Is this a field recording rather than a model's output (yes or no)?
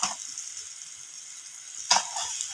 yes